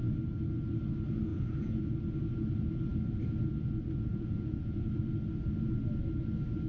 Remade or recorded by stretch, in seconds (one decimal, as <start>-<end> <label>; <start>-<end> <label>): 0.0-1.3 recorded; 1.3-1.8 remade; 1.8-4.1 recorded; 4.1-4.9 remade; 4.9-6.7 recorded